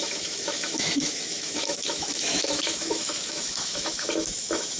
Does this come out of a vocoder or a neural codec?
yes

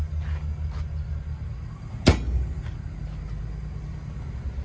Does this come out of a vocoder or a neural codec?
no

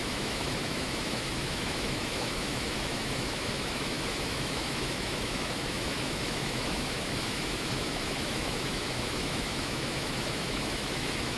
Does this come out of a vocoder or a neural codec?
yes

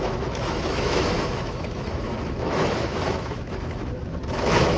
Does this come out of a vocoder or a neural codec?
yes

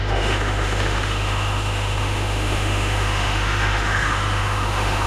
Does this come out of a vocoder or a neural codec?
yes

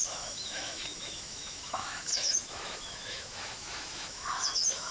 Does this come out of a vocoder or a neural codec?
yes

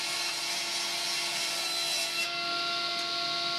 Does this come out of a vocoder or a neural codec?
no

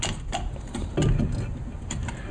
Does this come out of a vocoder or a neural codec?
no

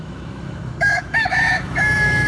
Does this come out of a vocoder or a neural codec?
yes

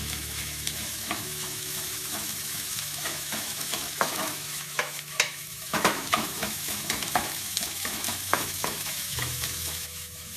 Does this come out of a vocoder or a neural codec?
yes